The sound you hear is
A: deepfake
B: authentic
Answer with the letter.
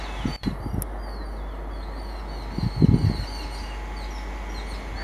B